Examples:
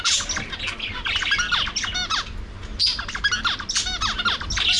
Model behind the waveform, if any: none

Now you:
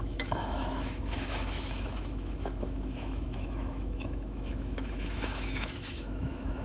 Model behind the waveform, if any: autoencoder, DAC-VAE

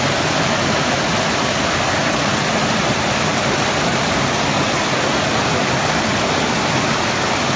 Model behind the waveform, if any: none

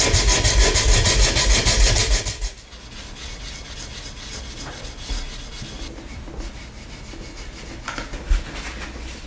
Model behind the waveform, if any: none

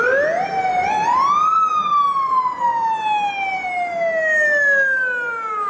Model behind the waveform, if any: none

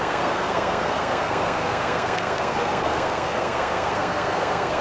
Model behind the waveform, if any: codec, SNAC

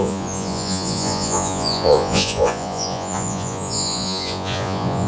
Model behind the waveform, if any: vocoder, Vocos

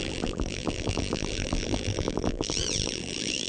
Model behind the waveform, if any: vocoder, BigVGAN v2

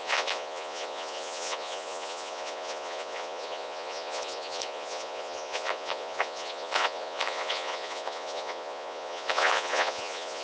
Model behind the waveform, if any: vocoder, Vocos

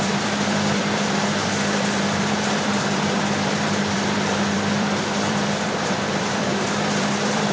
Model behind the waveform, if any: vocoder, BigVGAN v2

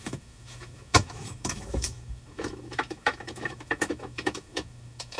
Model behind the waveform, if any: autoencoder, DAC-VAE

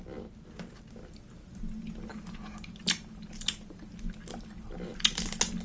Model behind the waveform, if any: none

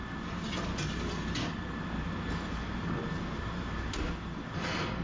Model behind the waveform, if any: none